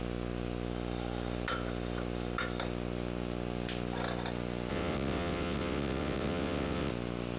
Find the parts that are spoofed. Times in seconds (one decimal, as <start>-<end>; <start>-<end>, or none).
4.7-6.9